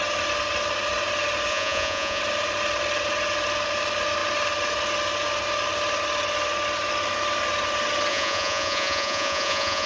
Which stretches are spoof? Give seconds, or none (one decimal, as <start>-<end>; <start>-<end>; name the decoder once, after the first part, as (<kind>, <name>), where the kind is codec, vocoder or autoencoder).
1.5-2.2 (vocoder, Vocos); 8.1-9.9